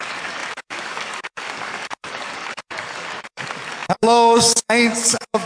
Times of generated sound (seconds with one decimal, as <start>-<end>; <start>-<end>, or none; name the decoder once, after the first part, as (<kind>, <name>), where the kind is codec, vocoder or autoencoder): 0.0-5.5 (codec, DAC)